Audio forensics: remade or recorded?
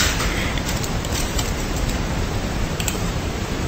remade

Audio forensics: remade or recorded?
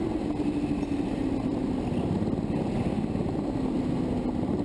recorded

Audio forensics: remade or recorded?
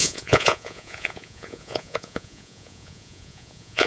remade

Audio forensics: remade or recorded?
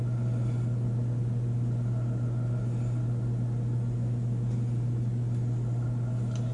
recorded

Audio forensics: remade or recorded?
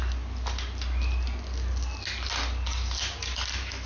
recorded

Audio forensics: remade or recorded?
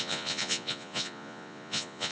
remade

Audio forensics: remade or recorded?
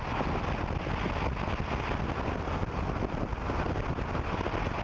recorded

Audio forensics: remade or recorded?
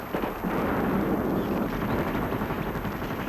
recorded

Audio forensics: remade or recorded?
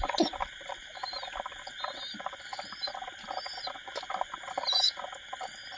recorded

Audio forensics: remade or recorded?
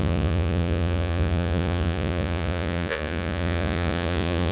remade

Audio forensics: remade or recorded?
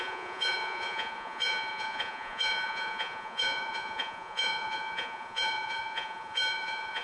remade